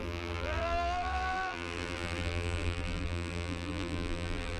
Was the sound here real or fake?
fake